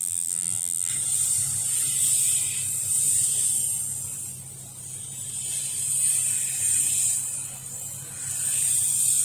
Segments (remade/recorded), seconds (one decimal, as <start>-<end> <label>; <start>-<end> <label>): 0.0-0.9 remade; 0.9-9.2 recorded